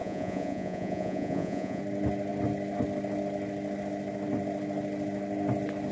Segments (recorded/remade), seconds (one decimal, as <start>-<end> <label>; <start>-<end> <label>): 0.0-1.8 remade; 1.8-5.9 recorded

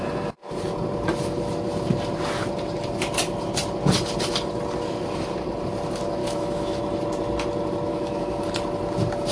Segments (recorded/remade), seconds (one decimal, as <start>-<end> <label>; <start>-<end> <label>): 0.0-6.2 recorded; 6.2-6.8 remade; 6.8-7.9 recorded; 7.9-8.4 remade; 8.4-9.3 recorded

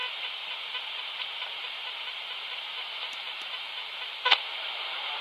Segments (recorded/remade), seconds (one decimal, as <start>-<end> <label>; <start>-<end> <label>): 0.0-5.2 remade

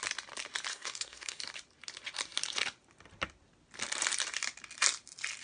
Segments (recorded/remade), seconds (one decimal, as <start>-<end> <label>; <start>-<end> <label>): 0.0-0.7 recorded; 0.7-1.4 remade; 1.4-5.4 recorded

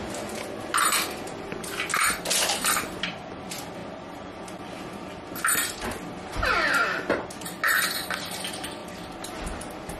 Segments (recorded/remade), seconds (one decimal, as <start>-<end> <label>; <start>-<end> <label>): 0.0-10.0 recorded

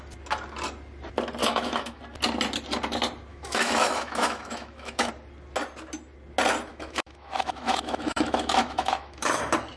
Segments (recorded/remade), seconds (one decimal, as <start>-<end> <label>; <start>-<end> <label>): 0.0-1.4 recorded; 1.4-2.0 remade; 2.0-3.3 recorded; 3.3-5.1 remade; 5.1-6.7 recorded; 6.7-9.4 remade; 9.4-9.8 recorded

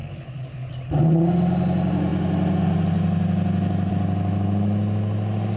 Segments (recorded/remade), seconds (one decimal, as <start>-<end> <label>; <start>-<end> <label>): 0.0-0.7 remade; 0.7-5.6 recorded

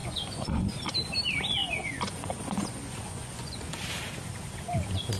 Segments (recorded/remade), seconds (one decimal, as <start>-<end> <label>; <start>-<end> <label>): 0.0-0.6 remade; 0.6-1.6 recorded; 1.6-3.7 remade; 3.7-5.2 recorded